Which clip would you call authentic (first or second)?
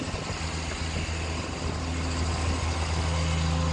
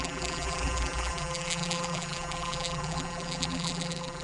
first